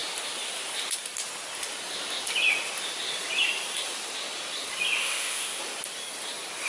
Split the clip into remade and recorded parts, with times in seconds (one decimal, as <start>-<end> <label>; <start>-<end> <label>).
0.0-5.0 recorded; 5.0-5.6 remade; 5.6-6.7 recorded